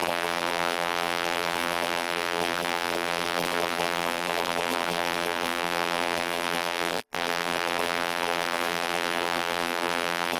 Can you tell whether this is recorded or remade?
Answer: remade